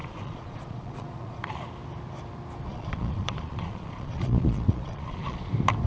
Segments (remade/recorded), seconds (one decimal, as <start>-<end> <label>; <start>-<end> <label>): 0.0-1.5 remade; 1.5-2.7 recorded; 2.7-5.5 remade; 5.5-5.9 recorded